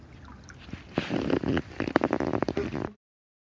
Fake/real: real